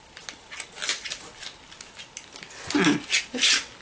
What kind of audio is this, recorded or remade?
recorded